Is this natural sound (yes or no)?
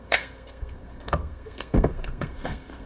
no